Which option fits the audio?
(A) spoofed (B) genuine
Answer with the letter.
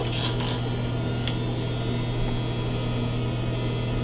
B